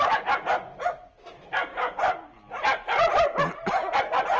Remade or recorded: recorded